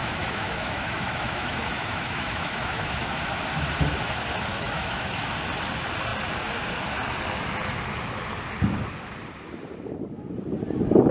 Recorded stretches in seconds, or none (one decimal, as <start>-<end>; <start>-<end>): 3.4-4.5; 5.3-11.1